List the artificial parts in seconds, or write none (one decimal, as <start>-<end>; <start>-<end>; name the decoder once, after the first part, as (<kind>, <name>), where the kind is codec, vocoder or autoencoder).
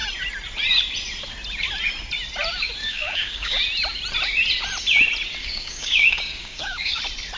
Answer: 2.8-3.6 (codec, DAC); 5.4-7.0